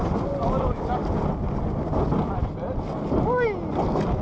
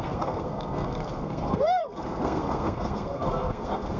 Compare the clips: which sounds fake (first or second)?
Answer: second